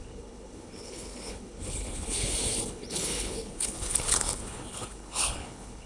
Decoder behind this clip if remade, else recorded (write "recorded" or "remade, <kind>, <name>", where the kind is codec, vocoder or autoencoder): remade, codec, HILCodec